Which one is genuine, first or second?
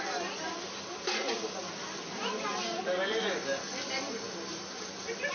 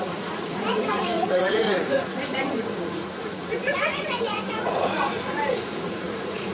first